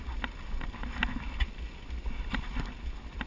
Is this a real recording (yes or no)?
yes